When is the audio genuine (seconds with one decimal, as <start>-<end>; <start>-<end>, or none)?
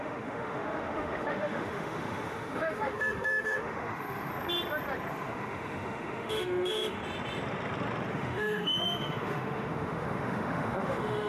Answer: 4.3-5.1; 7.0-8.1